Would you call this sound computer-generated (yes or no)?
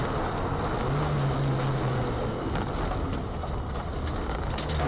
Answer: no